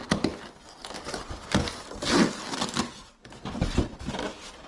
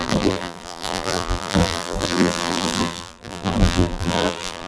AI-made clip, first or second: second